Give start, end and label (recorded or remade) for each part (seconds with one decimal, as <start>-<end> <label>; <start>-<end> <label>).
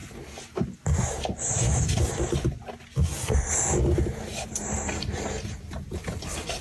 0.0-4.3 recorded; 4.3-4.9 remade; 4.9-6.6 recorded